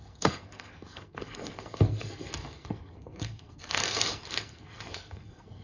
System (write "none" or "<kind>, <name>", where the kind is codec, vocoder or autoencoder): codec, SNAC